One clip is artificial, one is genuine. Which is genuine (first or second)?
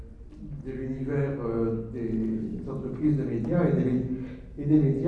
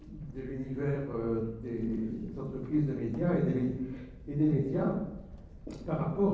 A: first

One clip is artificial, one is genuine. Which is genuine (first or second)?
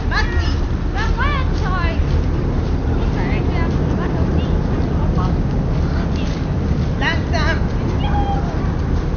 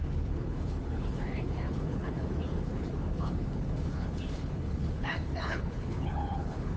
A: first